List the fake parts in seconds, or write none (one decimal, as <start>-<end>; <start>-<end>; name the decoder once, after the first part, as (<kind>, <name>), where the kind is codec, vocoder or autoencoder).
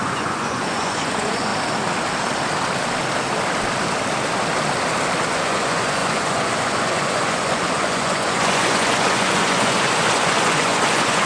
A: 0.0-1.5 (vocoder, Vocos); 5.3-11.3